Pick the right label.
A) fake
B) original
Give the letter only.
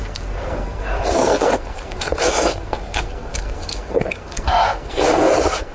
A